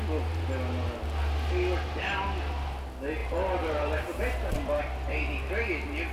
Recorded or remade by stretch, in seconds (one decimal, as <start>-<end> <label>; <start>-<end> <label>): 0.0-3.2 recorded; 3.2-4.8 remade; 4.8-6.1 recorded